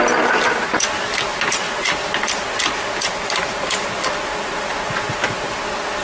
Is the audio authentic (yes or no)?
yes